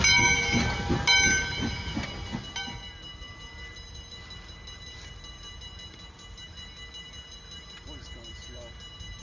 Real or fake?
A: real